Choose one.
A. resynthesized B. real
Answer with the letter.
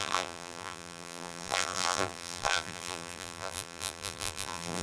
A